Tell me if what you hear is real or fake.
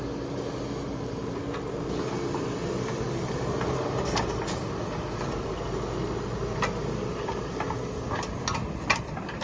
real